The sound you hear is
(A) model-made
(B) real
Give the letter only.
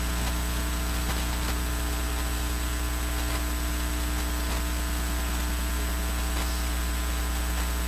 B